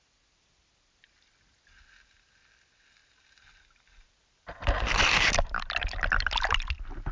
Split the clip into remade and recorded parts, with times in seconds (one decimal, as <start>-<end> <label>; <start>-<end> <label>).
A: 0.0-7.1 recorded